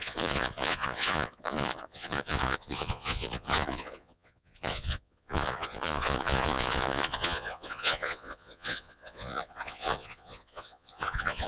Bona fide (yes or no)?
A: no